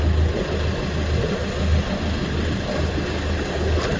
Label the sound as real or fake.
real